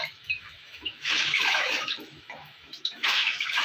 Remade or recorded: remade